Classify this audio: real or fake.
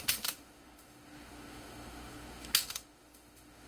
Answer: fake